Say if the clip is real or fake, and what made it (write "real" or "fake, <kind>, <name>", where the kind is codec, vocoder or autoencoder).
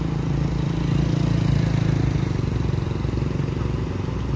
real